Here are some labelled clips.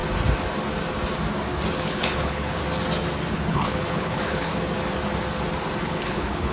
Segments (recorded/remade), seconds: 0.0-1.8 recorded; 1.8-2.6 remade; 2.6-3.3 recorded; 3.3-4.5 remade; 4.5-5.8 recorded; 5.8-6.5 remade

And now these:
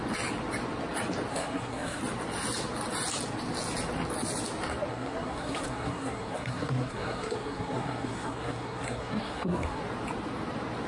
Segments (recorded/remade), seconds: 0.0-1.3 recorded; 1.3-2.0 remade; 2.0-4.9 recorded; 4.9-9.8 remade; 9.8-10.9 recorded